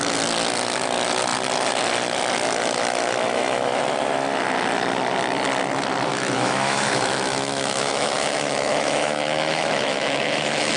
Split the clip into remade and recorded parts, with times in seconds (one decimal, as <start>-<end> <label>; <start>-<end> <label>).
0.0-6.1 recorded; 6.1-10.8 remade